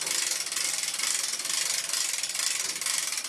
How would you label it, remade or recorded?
recorded